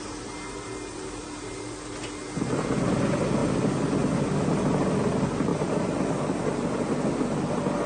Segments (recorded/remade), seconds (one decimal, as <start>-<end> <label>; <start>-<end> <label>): 0.0-7.9 recorded